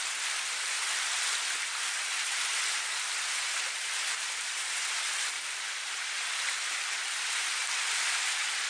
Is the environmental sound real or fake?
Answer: real